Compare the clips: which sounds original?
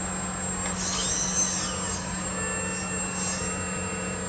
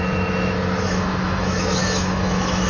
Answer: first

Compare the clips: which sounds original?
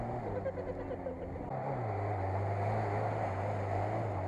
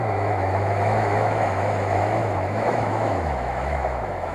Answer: first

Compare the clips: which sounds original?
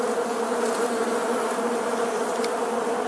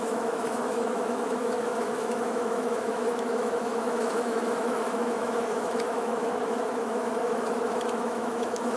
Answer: first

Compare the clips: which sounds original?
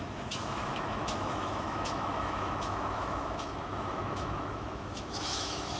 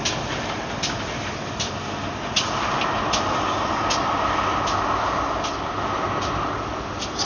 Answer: second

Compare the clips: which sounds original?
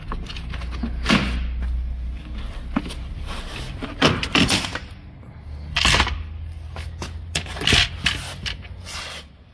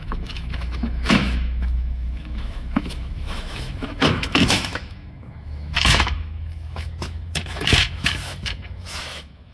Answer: first